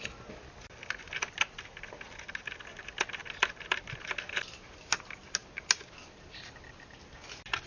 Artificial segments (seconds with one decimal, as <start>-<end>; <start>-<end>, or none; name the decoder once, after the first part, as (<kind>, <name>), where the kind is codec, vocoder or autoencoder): none

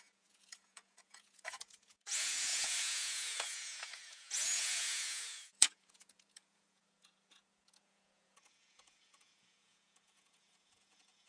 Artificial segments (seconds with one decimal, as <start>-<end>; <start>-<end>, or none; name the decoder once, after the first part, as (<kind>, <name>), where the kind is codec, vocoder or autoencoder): 0.0-11.3 (vocoder, Vocos)

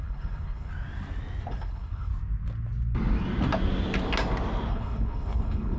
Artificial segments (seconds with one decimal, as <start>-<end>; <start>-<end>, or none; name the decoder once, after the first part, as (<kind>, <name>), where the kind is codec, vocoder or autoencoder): 0.0-0.7 (codec, HILCodec); 1.5-2.1; 4.7-5.8

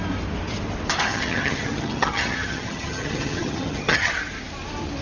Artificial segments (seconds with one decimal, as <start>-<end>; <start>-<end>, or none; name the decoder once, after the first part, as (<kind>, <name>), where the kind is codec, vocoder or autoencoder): 1.1-4.1 (vocoder, HiFi-GAN)